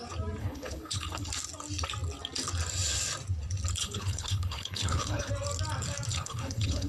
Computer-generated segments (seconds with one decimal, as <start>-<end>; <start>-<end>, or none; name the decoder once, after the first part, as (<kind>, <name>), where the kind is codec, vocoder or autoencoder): 0.4-1.3 (codec, HILCodec); 3.8-5.3; 6.1-6.9